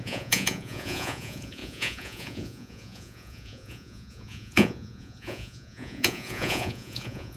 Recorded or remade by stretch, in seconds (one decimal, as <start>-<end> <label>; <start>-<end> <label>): 0.0-7.4 remade